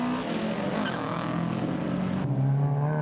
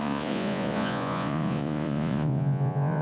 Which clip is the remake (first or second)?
second